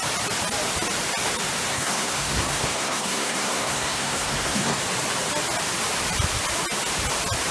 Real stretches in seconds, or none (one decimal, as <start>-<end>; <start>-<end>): 0.0-1.7; 4.8-7.5